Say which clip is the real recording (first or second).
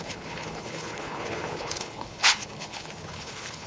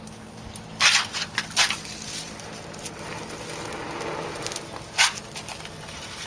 second